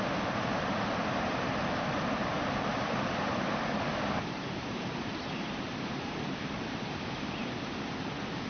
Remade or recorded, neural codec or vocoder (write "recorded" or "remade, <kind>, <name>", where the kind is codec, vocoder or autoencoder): remade, vocoder, BigVGAN v2